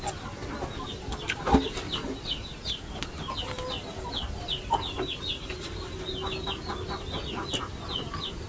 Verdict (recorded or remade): recorded